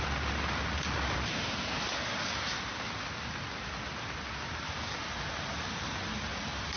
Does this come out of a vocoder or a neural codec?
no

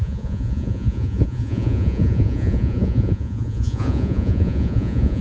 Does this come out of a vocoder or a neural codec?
yes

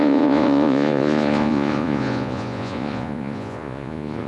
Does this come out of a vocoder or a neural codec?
yes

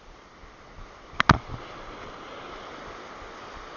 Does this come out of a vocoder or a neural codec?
no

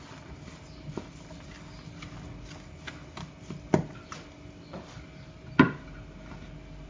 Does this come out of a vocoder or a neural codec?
no